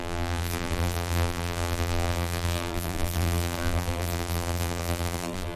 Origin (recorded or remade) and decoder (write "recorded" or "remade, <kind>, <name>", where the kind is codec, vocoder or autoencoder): remade, vocoder, BigVGAN v2